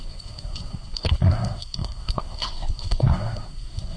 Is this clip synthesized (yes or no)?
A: yes